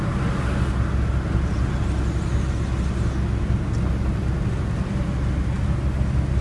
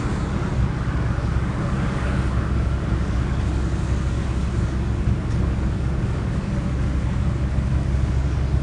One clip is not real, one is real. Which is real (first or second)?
first